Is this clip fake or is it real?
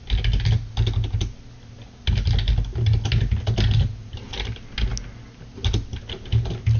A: real